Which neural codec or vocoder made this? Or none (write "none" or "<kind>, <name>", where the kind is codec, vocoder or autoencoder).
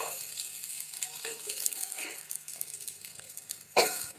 codec, SNAC